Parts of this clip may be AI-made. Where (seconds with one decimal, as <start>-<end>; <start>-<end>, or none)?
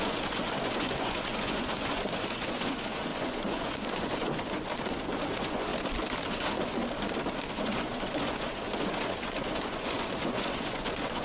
0.0-5.7; 6.3-6.8; 7.5-11.2